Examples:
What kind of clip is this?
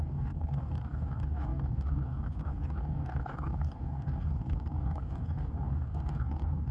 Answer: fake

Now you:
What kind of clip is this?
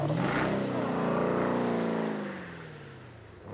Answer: real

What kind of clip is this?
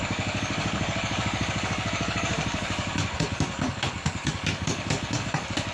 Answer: fake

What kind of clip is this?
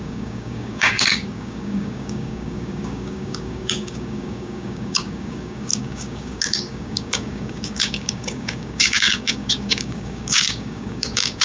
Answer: fake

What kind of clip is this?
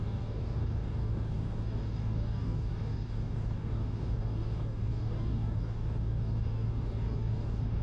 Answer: fake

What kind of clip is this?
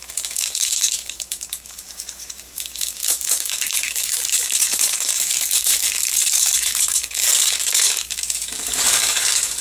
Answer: fake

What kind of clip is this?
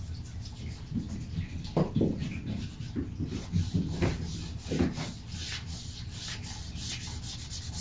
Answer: real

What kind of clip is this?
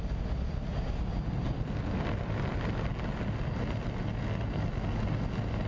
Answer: real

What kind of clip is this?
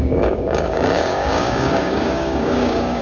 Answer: fake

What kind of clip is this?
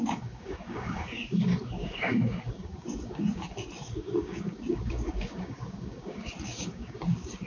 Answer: fake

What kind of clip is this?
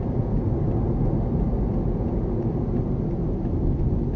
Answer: real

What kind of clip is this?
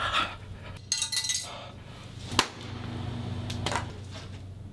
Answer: real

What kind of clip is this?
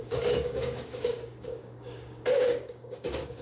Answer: fake